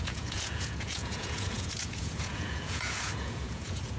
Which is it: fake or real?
fake